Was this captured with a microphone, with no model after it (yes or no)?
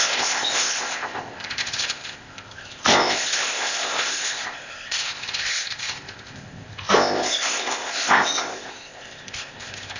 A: no